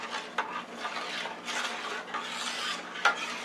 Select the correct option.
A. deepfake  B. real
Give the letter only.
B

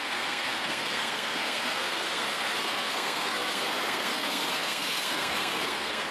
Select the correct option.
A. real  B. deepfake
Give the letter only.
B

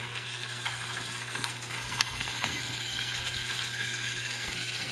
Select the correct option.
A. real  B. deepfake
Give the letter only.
B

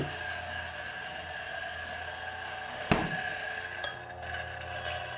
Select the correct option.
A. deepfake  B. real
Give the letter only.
B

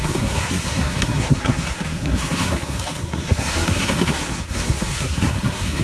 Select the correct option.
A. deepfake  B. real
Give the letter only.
A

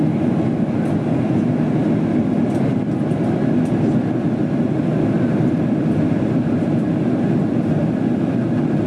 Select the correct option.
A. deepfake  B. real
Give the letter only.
B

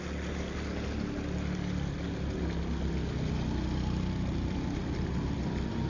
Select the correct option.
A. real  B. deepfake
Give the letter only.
A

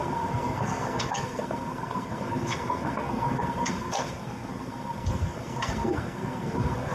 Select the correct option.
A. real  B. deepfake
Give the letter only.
B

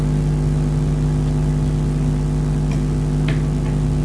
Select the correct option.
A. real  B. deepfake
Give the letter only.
A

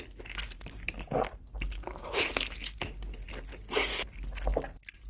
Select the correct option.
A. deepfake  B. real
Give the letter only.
B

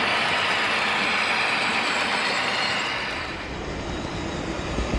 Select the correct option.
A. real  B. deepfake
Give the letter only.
A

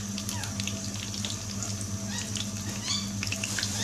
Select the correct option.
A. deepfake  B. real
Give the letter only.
B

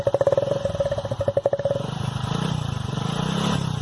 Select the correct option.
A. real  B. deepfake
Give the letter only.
A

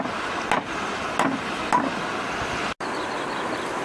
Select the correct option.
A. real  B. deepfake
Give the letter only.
A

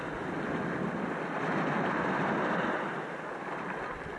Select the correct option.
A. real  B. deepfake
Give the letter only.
A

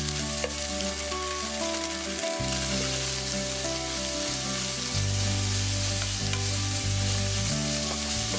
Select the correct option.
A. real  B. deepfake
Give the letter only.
A